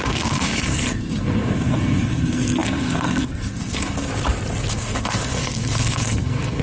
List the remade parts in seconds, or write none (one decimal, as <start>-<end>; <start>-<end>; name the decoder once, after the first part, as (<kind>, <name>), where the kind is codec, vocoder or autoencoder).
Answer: 0.0-4.1 (codec, SNAC); 4.7-6.6